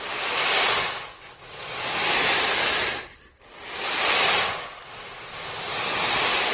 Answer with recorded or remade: recorded